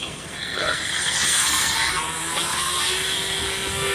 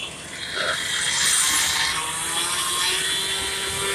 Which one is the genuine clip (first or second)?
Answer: second